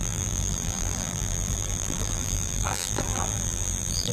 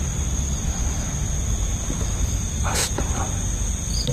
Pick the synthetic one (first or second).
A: first